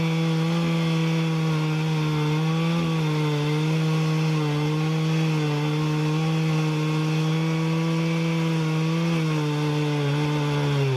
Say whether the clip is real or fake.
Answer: real